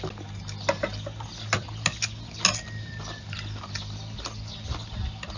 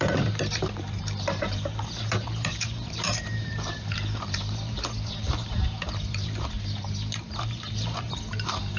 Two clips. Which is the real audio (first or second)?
first